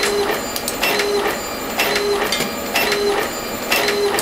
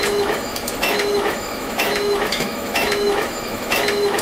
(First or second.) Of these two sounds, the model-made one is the second